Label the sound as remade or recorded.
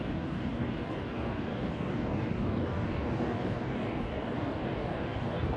remade